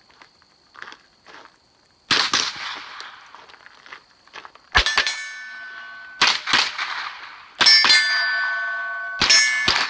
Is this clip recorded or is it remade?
recorded